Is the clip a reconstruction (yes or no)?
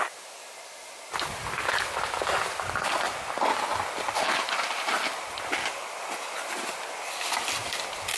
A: no